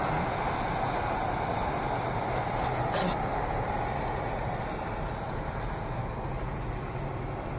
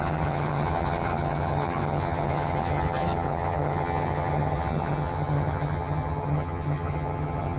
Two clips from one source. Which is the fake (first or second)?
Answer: second